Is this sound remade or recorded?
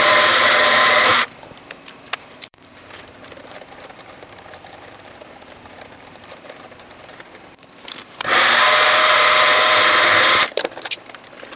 remade